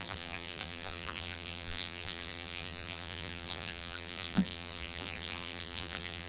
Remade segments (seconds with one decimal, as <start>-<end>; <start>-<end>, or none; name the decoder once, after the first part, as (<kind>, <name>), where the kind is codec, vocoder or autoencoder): 0.0-6.3 (vocoder, BigVGAN v2)